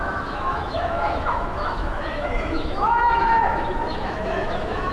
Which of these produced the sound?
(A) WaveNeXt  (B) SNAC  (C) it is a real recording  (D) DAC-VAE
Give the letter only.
D